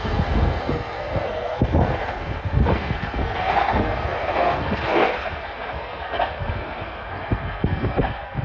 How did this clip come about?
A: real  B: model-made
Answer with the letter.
B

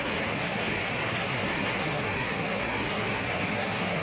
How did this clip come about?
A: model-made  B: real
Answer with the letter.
A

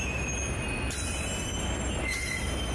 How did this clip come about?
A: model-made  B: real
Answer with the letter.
B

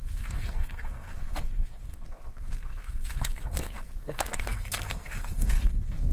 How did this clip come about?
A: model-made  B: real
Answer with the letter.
A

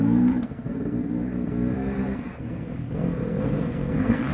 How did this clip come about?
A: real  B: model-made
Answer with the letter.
B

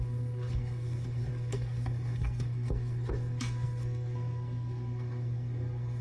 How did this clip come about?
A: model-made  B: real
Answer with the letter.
A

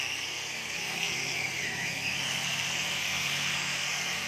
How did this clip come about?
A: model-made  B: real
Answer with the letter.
A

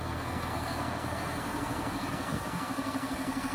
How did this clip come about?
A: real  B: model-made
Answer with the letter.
B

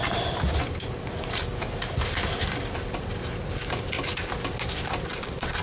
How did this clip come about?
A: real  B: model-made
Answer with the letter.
A